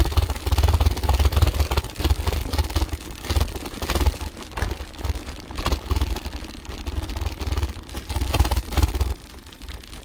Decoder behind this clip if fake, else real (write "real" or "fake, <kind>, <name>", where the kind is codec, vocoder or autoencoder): real